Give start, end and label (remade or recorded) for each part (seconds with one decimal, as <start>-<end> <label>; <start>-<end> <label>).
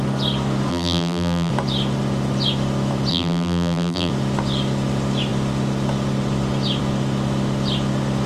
0.0-0.7 recorded; 0.7-1.5 remade; 1.5-3.1 recorded; 3.1-4.1 remade; 4.1-8.3 recorded